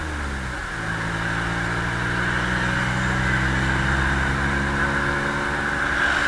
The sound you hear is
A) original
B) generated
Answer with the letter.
A